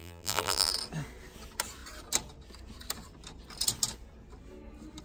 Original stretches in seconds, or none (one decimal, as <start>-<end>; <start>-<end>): 0.7-5.0